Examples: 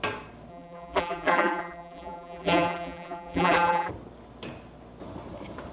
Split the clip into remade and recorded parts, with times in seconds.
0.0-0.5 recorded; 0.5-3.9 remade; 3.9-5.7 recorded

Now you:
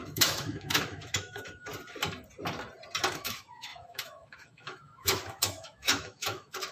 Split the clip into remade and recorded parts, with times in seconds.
0.0-1.7 remade; 1.7-3.1 recorded; 3.1-6.7 remade

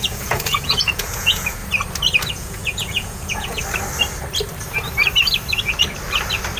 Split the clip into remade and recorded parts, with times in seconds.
0.0-1.6 remade; 1.6-2.3 recorded; 2.3-3.6 remade; 3.6-6.6 recorded

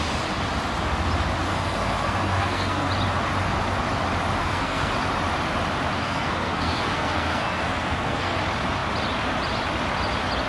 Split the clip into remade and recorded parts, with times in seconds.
0.0-1.5 recorded; 1.5-2.9 remade; 2.9-4.4 recorded; 4.4-4.9 remade; 4.9-6.0 recorded; 6.0-8.4 remade; 8.4-10.5 recorded

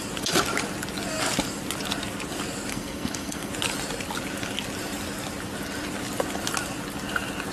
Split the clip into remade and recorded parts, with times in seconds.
0.0-2.7 recorded; 2.7-3.5 remade; 3.5-7.5 recorded

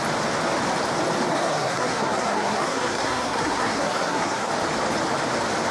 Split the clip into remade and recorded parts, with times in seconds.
0.0-1.3 recorded; 1.3-4.5 remade; 4.5-5.7 recorded

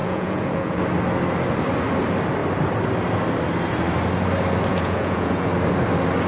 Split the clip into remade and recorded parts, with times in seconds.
0.0-0.8 remade; 0.8-4.7 recorded; 4.7-5.5 remade; 5.5-6.3 recorded